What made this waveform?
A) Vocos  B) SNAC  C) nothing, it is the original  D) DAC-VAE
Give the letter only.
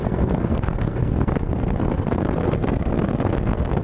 B